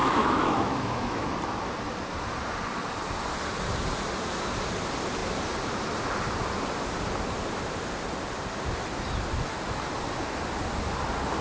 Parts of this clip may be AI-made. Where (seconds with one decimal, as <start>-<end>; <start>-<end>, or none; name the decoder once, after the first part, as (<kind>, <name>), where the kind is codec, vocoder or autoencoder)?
0.0-1.2 (autoencoder, DAC-VAE)